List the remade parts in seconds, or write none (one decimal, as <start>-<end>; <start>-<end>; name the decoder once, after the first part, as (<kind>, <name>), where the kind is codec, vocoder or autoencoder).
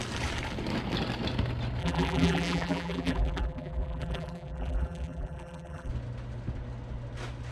1.8-5.9 (vocoder, BigVGAN v2)